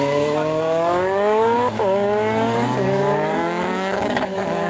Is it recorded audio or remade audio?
remade